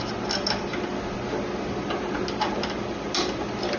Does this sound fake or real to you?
real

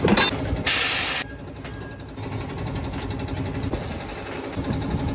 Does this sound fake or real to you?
real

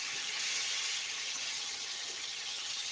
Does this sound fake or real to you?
fake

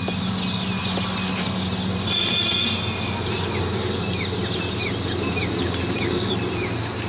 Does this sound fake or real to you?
real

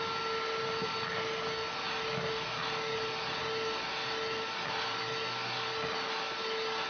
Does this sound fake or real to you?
real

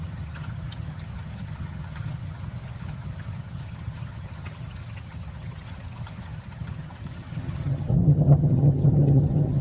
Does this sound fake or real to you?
fake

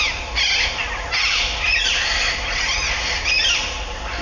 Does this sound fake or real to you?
real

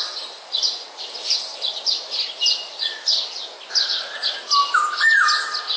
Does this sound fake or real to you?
real